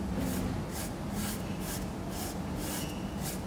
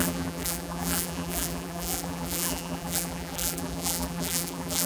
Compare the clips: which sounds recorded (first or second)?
first